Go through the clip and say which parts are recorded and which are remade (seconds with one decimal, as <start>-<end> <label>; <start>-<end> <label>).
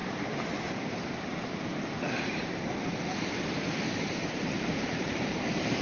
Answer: 0.0-5.8 remade